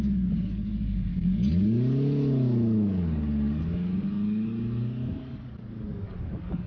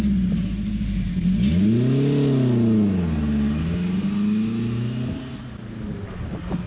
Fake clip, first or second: first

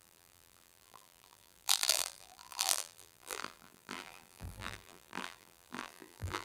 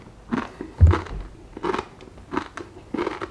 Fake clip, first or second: first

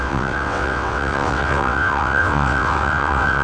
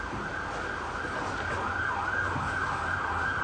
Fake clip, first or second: first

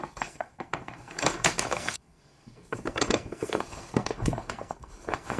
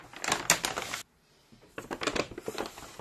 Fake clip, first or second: first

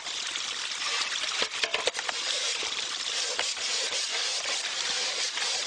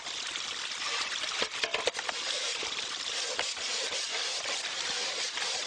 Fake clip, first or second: second